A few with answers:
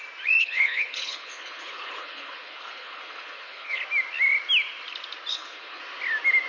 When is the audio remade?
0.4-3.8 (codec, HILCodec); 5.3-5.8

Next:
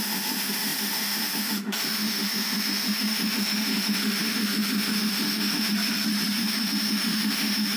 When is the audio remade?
0.0-5.7 (autoencoder, DAC-VAE); 6.4-7.8

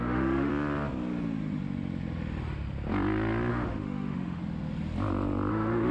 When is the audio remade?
0.0-0.5 (autoencoder, DAC-VAE); 3.5-4.4; 5.5-5.9